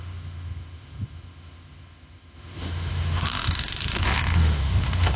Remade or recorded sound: remade